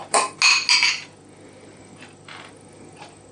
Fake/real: real